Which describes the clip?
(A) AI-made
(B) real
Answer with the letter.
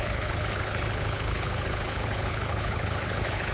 A